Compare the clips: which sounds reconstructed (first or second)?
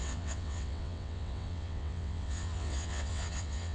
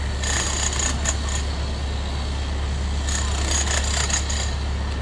first